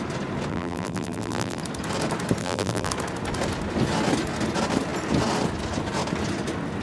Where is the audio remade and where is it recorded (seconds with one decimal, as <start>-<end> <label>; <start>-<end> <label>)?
0.0-0.5 recorded; 0.5-1.6 remade; 1.6-2.4 recorded; 2.4-2.9 remade; 2.9-6.8 recorded